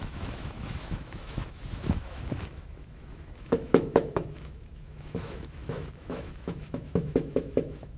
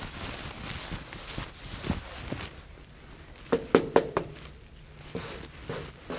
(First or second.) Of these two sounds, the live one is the second